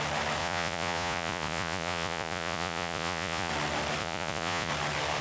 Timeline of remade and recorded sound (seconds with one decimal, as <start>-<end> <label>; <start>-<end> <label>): 0.0-0.4 recorded; 0.4-3.5 remade; 3.5-4.0 recorded; 4.0-4.7 remade; 4.7-5.2 recorded